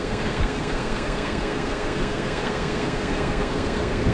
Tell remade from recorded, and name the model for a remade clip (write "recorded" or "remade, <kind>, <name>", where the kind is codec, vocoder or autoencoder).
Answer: remade, codec, SNAC